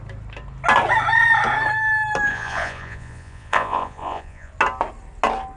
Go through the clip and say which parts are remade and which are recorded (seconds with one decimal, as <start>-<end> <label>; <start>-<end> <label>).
0.0-2.3 recorded; 2.3-4.5 remade; 4.5-5.6 recorded